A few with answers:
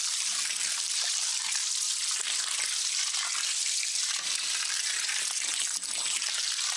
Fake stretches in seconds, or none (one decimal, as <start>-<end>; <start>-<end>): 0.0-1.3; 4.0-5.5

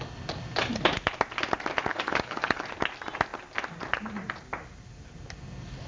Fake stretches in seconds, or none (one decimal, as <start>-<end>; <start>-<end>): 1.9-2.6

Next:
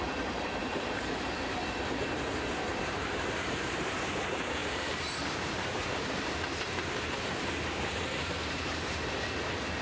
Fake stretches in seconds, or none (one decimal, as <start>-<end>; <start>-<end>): 0.6-1.3; 2.7-4.0; 4.6-9.0

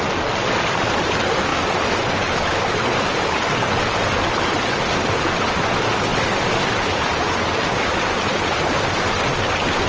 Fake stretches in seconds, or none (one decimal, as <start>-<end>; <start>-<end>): none